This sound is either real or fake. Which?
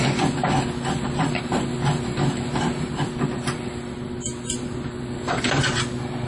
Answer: real